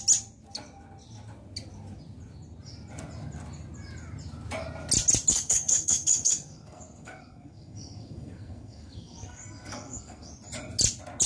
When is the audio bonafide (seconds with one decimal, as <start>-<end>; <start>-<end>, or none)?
0.0-5.3; 10.3-11.3

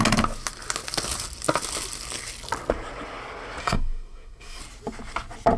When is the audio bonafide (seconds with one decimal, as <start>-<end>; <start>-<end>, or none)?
0.0-3.6; 4.6-5.6